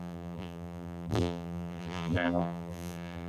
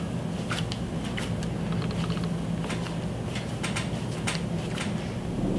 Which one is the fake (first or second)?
first